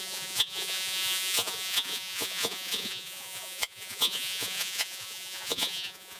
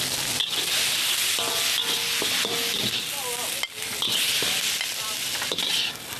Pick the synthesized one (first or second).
first